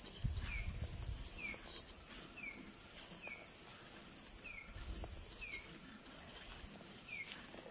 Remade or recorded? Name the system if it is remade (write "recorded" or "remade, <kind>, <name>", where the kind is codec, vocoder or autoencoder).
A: recorded